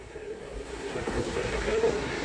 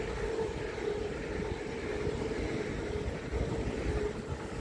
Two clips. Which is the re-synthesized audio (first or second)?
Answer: first